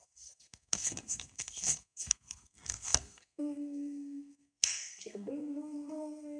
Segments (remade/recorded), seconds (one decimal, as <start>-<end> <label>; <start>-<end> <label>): 0.0-6.4 remade